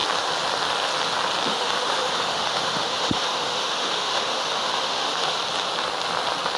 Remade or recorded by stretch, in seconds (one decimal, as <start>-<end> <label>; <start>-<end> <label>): 0.0-1.5 recorded; 1.5-5.4 remade; 5.4-6.6 recorded